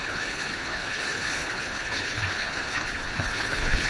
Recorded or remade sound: remade